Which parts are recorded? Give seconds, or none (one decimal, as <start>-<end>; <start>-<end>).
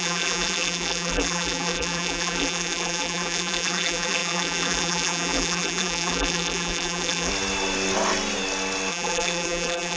7.3-8.9